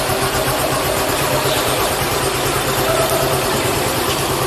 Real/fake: fake